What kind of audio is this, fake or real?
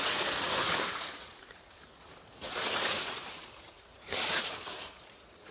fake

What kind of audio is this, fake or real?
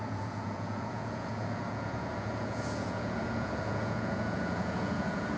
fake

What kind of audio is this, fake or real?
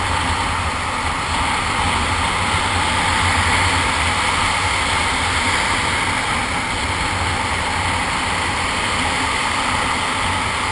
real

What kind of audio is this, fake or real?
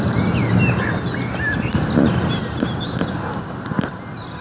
real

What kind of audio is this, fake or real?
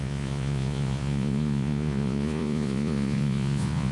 fake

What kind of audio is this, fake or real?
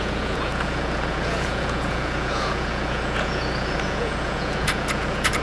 fake